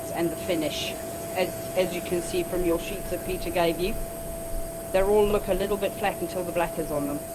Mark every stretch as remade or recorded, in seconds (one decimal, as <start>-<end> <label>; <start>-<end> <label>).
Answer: 0.0-4.1 remade; 4.1-5.3 recorded; 5.3-7.3 remade